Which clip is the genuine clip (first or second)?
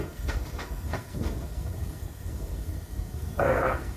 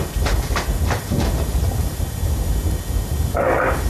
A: second